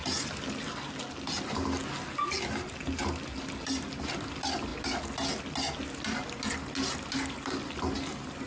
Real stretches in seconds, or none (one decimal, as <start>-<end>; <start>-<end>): 0.0-8.5